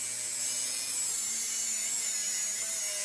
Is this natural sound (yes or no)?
yes